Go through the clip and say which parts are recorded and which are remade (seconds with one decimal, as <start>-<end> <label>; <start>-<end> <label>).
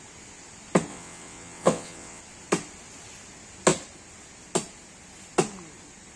0.0-0.9 recorded; 0.9-2.2 remade; 2.2-6.2 recorded